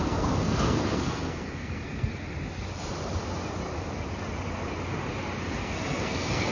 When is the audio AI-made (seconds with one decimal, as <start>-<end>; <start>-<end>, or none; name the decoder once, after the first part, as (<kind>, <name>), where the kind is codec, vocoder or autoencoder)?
0.0-2.1 (codec, SNAC); 5.6-6.5